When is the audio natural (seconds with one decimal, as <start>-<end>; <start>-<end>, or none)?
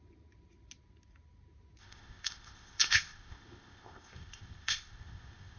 0.0-1.8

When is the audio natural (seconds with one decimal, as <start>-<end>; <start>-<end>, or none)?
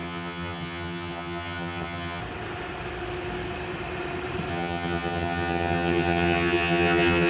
2.2-4.5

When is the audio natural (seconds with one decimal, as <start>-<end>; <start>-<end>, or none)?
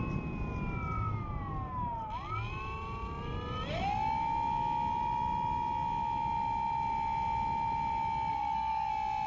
0.0-8.3; 8.9-9.3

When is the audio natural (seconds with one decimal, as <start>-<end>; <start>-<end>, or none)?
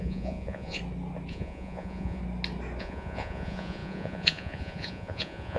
0.8-1.3; 2.2-2.8